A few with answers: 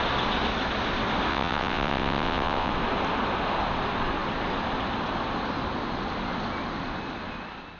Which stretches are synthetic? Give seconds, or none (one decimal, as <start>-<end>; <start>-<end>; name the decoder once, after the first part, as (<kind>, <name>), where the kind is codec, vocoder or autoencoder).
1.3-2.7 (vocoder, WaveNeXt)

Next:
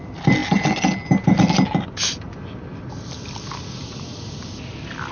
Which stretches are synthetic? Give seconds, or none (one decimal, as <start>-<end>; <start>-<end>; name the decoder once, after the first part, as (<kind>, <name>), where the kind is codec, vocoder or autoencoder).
none

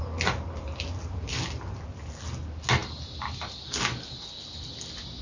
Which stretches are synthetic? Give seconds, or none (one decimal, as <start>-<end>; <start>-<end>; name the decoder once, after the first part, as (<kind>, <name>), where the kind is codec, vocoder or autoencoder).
none

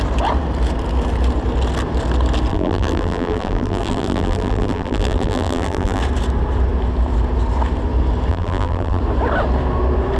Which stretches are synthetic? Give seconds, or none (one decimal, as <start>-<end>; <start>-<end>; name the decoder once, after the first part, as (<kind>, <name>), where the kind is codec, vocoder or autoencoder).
2.5-6.0 (vocoder, BigVGAN v2); 8.3-9.0

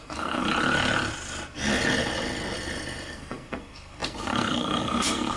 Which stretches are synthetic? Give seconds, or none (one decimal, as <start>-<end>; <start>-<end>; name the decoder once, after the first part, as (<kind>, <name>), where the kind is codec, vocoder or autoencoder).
0.0-0.4 (codec, SNAC); 3.1-5.4

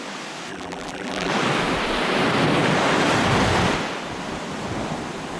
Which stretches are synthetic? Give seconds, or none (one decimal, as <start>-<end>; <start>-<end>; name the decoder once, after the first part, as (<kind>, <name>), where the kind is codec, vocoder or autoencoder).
0.5-1.3 (vocoder, BigVGAN v2)